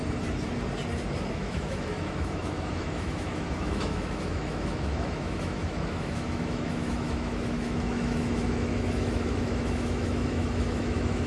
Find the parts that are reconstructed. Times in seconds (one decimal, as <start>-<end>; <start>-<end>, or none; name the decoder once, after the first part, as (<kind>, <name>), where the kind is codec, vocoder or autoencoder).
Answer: 1.3-11.3 (autoencoder, DAC-VAE)